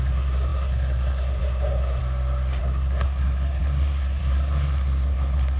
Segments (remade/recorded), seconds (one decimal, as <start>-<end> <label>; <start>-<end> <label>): 0.0-2.0 remade; 2.0-2.6 recorded; 2.6-5.6 remade